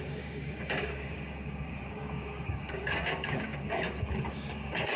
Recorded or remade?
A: remade